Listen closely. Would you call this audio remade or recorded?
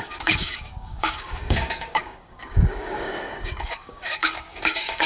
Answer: remade